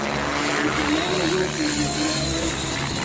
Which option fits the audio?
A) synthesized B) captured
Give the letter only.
B